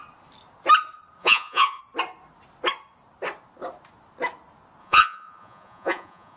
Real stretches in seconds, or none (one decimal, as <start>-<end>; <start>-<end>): 0.0-1.2; 1.8-4.8